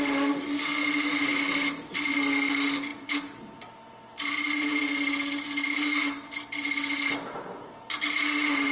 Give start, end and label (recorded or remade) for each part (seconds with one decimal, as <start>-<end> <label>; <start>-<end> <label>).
0.0-8.7 recorded